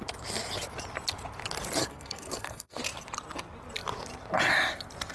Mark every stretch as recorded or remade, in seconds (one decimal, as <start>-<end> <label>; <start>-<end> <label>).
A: 0.0-1.8 recorded; 1.8-2.8 remade; 2.8-5.1 recorded